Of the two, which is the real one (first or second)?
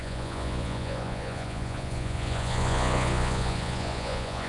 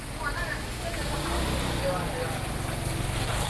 second